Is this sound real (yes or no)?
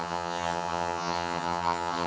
no